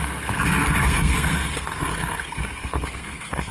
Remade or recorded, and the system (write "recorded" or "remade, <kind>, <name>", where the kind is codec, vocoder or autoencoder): remade, codec, SNAC